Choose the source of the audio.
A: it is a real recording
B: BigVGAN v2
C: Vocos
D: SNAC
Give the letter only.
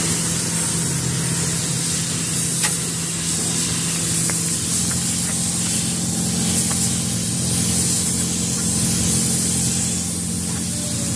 A